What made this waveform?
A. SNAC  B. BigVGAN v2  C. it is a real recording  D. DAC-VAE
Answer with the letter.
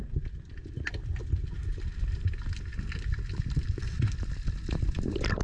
C